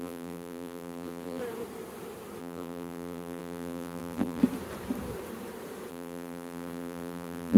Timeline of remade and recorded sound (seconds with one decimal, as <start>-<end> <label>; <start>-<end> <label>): 0.0-1.4 remade; 1.4-2.4 recorded; 2.4-4.4 remade; 4.4-5.9 recorded; 5.9-7.6 remade